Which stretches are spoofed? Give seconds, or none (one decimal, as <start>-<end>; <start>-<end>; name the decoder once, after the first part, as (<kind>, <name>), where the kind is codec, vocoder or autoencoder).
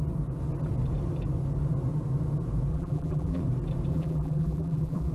2.7-3.4 (vocoder, BigVGAN v2); 3.9-5.1